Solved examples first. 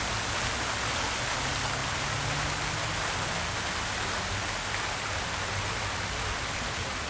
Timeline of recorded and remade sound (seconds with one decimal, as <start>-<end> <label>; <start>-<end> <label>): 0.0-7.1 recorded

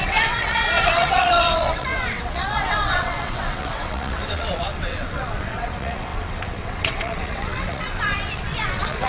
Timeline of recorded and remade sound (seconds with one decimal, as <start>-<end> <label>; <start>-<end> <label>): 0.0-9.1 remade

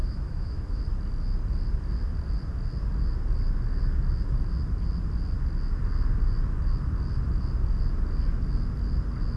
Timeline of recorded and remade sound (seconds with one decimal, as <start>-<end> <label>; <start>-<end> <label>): 0.0-0.8 remade; 0.8-9.4 recorded

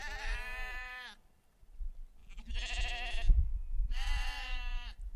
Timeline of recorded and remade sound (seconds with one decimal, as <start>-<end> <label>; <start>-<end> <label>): 0.0-2.2 remade; 2.2-3.4 recorded; 3.4-5.2 remade

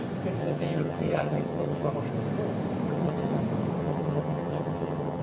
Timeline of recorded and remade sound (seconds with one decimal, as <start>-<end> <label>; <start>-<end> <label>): 0.0-0.4 recorded; 0.4-1.9 remade; 1.9-2.9 recorded; 2.9-3.4 remade; 3.4-3.8 recorded; 3.8-5.2 remade